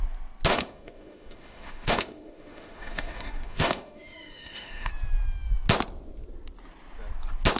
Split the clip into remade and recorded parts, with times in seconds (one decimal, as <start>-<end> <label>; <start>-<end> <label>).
0.0-0.5 recorded; 0.5-4.9 remade; 4.9-7.6 recorded